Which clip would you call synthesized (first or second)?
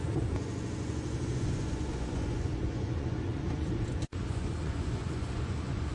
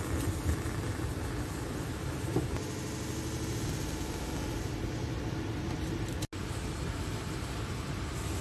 first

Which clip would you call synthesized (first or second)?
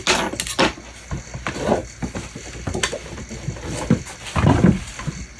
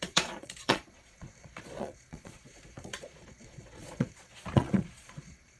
second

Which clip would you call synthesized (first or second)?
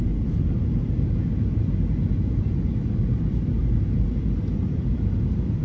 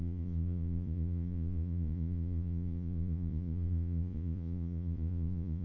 second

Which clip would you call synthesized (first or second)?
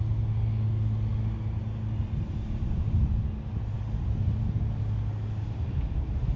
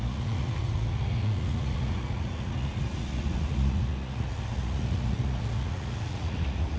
second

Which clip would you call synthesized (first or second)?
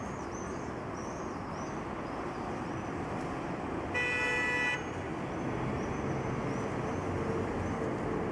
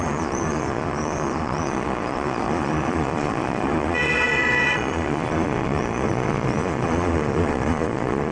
second